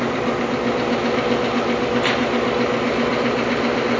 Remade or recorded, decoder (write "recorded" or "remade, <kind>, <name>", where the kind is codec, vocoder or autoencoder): recorded